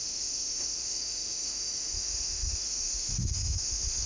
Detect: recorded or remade remade